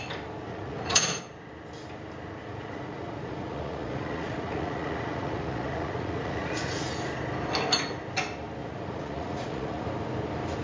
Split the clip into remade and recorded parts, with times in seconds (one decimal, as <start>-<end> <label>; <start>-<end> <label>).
0.0-0.5 recorded; 0.5-1.2 remade; 1.2-2.4 recorded; 2.4-6.9 remade; 6.9-8.6 recorded; 8.6-9.9 remade; 9.9-10.6 recorded